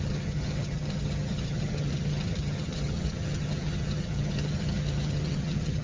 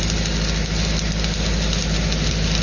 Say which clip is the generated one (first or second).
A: first